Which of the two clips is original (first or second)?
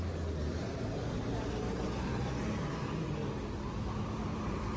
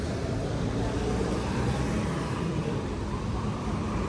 first